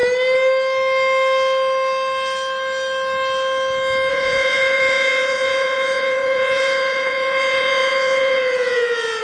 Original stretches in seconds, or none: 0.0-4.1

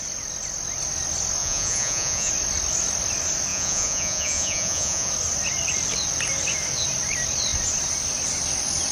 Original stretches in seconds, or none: 0.0-1.4; 2.3-3.5; 5.1-8.9

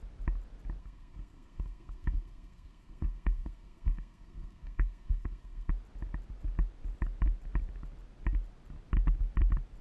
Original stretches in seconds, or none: 0.0-0.8; 5.7-9.8